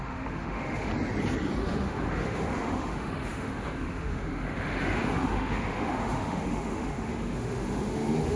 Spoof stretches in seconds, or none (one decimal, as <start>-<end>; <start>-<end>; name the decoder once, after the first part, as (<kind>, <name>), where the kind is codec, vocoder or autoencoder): 0.0-0.9 (autoencoder, DAC-VAE); 1.6-8.4